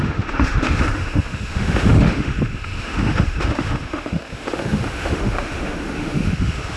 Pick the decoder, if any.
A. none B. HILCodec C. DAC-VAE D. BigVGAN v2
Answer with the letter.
C